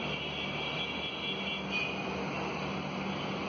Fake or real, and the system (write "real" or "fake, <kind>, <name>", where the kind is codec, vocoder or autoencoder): real